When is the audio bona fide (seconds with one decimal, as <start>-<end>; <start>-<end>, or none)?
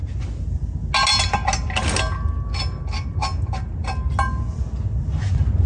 0.0-5.7